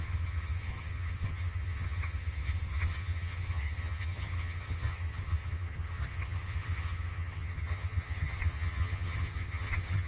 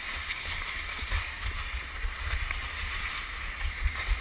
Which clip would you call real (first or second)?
second